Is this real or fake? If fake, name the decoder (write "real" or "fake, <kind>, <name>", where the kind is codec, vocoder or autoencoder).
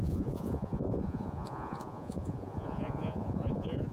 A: fake, vocoder, Vocos